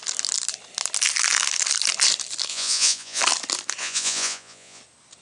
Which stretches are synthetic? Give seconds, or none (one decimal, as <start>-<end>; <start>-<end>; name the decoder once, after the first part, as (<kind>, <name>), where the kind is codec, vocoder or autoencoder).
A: 2.5-3.2 (vocoder, Vocos); 3.8-4.8